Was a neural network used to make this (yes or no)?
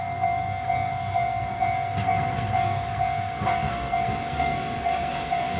yes